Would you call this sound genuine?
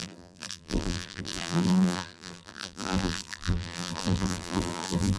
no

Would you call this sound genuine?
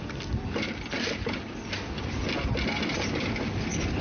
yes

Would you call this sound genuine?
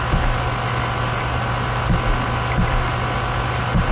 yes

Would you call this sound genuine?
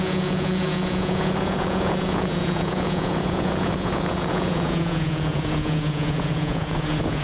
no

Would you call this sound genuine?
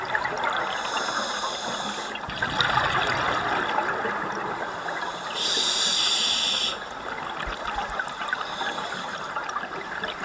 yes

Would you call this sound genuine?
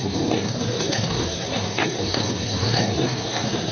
no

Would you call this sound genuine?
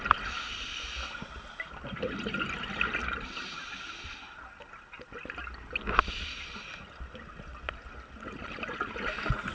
yes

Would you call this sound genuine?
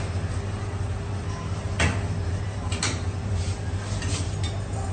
yes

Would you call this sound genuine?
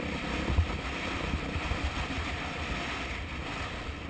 yes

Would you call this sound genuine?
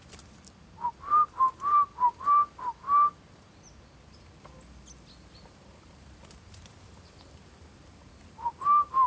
yes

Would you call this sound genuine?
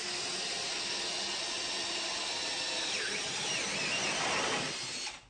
yes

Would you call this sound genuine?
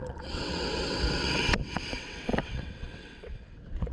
no